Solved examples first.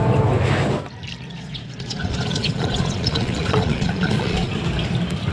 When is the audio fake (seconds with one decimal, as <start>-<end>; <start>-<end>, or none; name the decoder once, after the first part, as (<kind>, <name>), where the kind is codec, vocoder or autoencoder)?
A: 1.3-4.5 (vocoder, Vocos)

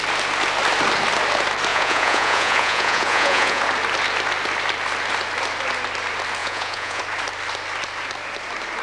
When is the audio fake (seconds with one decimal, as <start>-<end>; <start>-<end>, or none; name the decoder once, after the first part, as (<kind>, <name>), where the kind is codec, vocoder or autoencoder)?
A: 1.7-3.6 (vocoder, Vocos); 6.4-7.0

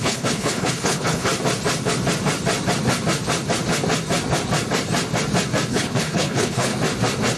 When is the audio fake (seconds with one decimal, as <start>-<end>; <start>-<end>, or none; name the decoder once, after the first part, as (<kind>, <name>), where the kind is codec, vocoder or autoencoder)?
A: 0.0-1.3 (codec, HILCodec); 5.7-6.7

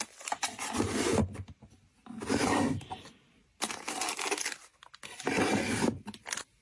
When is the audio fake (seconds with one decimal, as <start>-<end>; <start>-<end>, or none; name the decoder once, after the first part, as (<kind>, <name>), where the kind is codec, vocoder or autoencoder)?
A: none

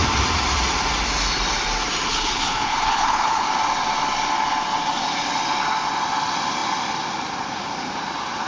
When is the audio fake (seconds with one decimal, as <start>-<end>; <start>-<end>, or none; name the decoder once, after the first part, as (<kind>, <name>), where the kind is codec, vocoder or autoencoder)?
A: 2.1-3.5 (codec, HILCodec)